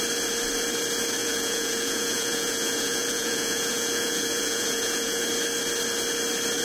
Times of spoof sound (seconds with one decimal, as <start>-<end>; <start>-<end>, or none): 1.2-5.2